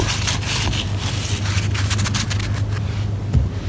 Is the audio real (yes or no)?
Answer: yes